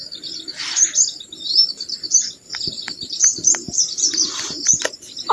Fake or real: real